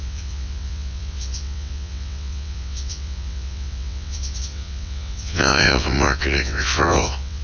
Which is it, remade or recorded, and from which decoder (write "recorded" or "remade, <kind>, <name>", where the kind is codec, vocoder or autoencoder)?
remade, vocoder, WaveNeXt